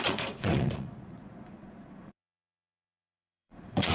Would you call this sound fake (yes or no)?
yes